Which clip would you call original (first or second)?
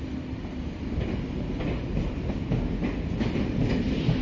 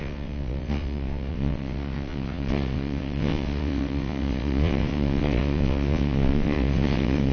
first